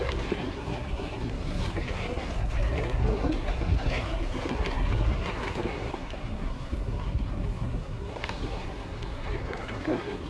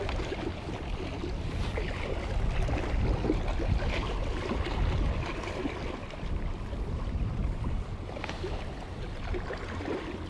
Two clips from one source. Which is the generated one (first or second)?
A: first